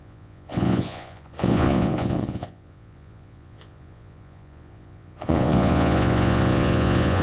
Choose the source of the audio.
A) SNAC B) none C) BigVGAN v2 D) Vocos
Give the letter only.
D